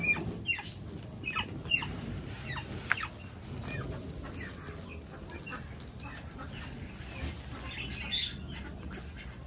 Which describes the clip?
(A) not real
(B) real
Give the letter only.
B